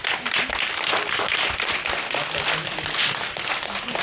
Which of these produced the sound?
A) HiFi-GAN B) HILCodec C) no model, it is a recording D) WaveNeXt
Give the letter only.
C